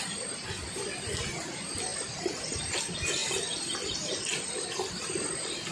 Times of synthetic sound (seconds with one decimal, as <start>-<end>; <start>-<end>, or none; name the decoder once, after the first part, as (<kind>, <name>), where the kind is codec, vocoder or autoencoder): 1.9-2.8 (vocoder, BigVGAN v2)

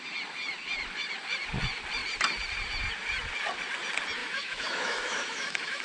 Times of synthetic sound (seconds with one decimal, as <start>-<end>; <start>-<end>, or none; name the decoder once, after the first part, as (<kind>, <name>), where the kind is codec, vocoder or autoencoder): 4.2-5.8 (autoencoder, DAC-VAE)

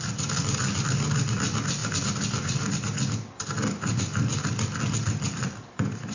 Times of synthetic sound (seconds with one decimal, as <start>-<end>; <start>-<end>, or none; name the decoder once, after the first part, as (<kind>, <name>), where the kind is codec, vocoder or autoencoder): none

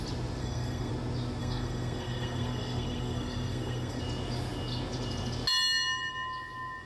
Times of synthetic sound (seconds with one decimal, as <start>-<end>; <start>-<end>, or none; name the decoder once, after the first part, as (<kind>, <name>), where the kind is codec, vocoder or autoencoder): 0.4-0.9 (codec, SNAC); 1.4-4.0

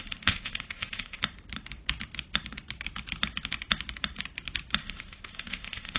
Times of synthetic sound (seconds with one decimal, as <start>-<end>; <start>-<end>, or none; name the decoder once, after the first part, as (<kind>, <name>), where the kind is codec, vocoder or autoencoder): 0.0-1.2 (codec, ZipCodec); 4.8-6.0

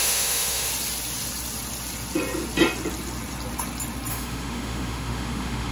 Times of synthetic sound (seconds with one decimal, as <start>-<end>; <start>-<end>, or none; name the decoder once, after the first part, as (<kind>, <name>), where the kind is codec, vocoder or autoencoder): 0.0-0.7 (autoencoder, DAC-VAE); 4.1-5.7

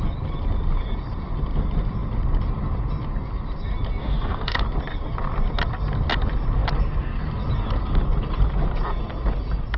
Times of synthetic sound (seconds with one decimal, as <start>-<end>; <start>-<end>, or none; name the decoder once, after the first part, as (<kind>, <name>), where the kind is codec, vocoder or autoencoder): 4.0-4.6 (autoencoder, DAC-VAE)